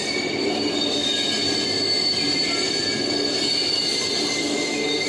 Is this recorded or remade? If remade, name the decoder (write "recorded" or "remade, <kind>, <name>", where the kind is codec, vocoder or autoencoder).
recorded